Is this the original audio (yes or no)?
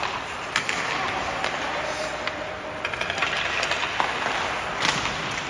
yes